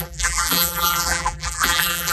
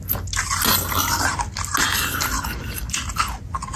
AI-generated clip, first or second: first